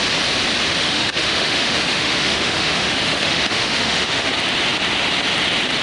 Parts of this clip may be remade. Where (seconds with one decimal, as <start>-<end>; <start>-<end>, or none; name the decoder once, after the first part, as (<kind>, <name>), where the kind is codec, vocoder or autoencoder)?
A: 0.8-4.3 (autoencoder, DAC-VAE)